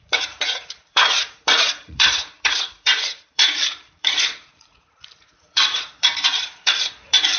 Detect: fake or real fake